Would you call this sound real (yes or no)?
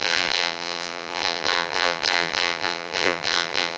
no